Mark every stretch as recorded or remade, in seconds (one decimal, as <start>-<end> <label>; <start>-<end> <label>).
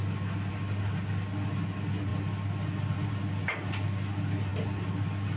0.0-5.4 recorded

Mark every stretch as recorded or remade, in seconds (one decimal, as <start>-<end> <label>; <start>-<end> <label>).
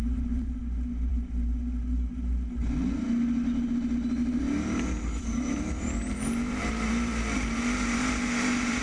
0.0-0.6 remade; 0.6-4.2 recorded; 4.2-8.8 remade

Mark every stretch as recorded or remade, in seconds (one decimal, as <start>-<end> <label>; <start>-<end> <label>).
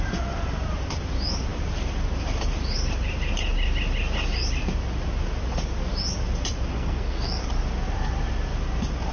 0.0-6.7 recorded; 6.7-7.4 remade; 7.4-9.1 recorded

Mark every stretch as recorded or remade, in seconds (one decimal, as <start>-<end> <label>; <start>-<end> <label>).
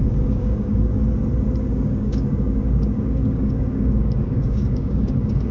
0.0-1.0 remade; 1.0-1.6 recorded; 1.6-5.5 remade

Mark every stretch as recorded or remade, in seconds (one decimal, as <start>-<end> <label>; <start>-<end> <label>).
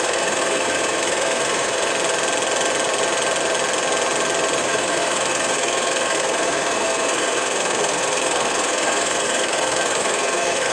0.0-1.9 remade; 1.9-4.6 recorded; 4.6-10.7 remade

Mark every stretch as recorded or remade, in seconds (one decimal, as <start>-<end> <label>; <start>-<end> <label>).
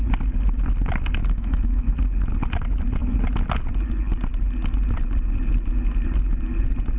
0.0-1.2 recorded; 1.2-1.9 remade; 1.9-7.0 recorded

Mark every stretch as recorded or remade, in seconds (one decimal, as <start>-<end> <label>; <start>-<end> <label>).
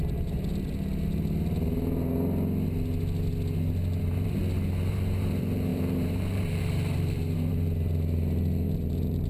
0.0-0.5 remade; 0.5-4.0 recorded; 4.0-4.4 remade; 4.4-4.9 recorded; 4.9-9.3 remade